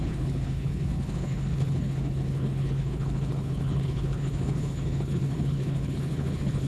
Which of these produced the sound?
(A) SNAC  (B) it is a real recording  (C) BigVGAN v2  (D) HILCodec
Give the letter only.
D